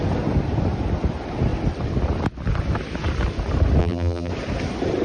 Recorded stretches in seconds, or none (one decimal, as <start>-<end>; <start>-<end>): 0.0-3.8; 4.3-5.0